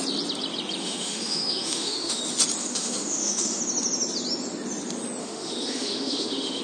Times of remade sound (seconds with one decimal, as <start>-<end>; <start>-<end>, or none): 0.8-2.2; 2.6-3.6; 5.2-6.6

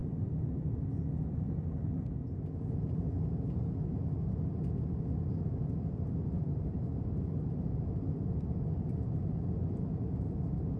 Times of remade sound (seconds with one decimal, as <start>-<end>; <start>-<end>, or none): none

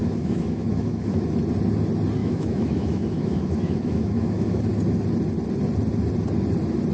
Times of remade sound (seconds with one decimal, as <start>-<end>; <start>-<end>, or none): 0.0-1.2; 2.2-4.6

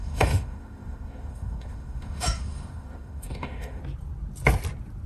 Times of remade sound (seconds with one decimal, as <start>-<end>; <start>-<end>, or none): 0.0-3.8